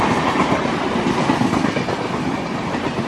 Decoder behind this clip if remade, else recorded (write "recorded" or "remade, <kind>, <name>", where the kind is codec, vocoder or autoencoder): recorded